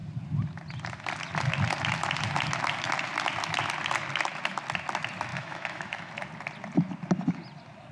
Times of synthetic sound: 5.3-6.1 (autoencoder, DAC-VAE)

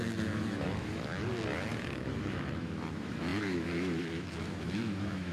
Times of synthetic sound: 0.0-1.2 (autoencoder, DAC-VAE); 1.7-5.3

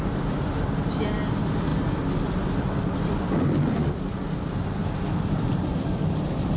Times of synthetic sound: none

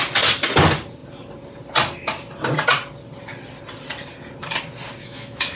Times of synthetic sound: 5.0-5.6 (autoencoder, DAC-VAE)